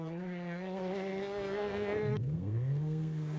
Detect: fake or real fake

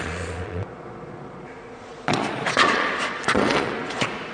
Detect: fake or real fake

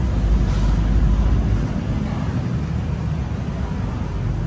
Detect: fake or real real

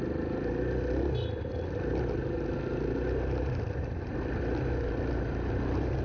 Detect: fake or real real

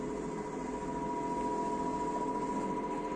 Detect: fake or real real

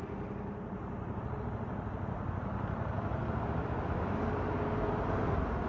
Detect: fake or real real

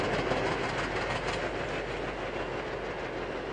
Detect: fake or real real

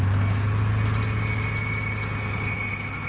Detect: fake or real real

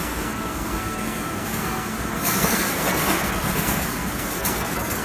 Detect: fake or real fake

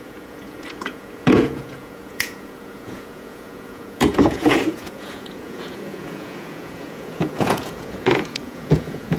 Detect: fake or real fake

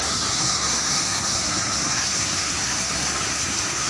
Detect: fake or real fake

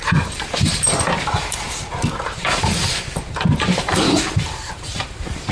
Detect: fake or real fake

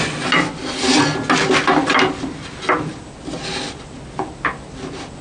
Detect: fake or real real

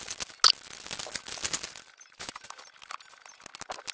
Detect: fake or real real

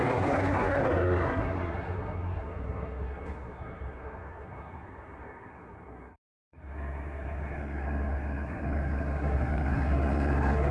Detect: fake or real fake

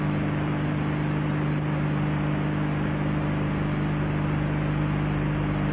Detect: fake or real real